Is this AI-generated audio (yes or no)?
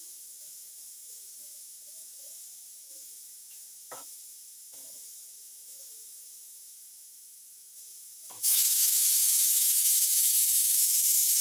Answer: yes